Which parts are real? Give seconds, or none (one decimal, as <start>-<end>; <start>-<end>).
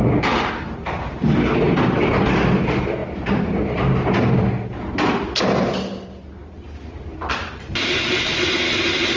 0.0-9.2